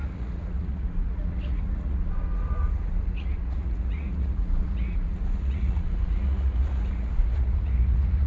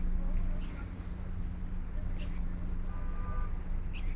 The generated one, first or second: first